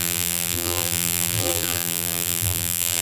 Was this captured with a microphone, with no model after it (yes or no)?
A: no